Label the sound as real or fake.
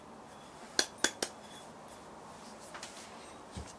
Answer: real